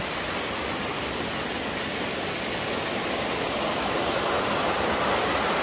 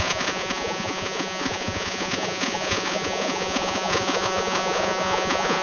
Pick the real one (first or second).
first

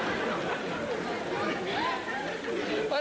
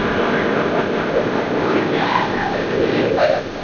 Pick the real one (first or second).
first